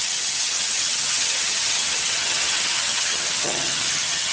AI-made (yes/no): yes